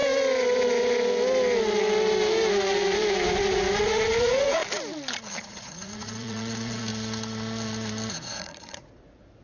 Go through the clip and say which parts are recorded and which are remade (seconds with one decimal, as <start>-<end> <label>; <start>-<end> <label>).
0.0-4.1 recorded; 4.1-4.6 remade; 4.6-5.4 recorded; 5.4-6.9 remade; 6.9-8.1 recorded; 8.1-9.4 remade